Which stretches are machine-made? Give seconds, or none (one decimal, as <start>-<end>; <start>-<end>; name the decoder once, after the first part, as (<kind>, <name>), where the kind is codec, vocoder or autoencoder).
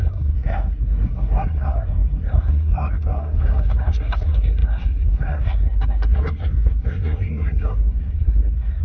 0.0-8.8 (codec, SNAC)